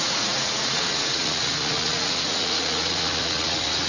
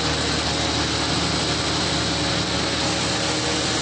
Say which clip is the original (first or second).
second